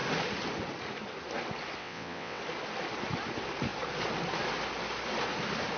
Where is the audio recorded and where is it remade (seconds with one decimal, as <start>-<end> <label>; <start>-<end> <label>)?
0.0-1.8 recorded; 1.8-2.4 remade; 2.4-5.8 recorded